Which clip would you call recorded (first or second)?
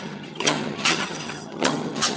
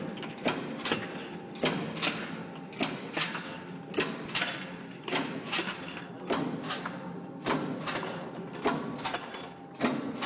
second